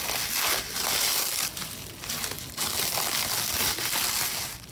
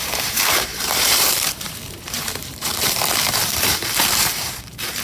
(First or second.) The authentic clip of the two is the first